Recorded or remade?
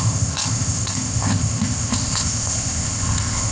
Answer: remade